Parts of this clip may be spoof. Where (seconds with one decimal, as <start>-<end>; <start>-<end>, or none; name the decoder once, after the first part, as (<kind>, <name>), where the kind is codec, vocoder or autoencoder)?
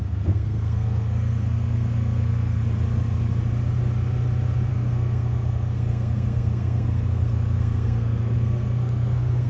0.0-2.6 (codec, SNAC); 4.7-9.5